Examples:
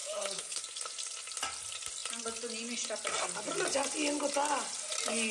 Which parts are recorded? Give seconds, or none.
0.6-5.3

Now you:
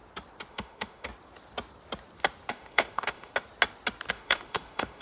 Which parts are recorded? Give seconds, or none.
0.0-0.5; 1.1-2.5; 3.3-4.1

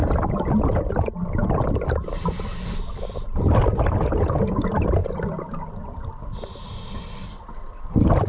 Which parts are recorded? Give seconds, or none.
3.6-5.0

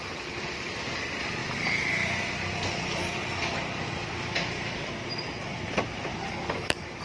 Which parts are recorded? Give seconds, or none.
0.0-6.1

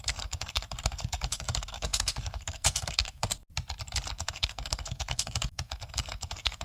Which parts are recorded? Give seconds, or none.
3.3-4.1